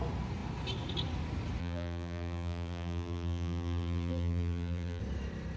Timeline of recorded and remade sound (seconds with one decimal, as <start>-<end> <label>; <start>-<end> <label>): 0.0-1.6 recorded; 1.6-5.0 remade; 5.0-5.6 recorded